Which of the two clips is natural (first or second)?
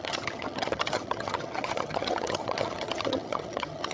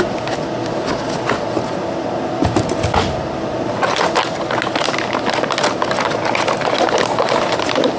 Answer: second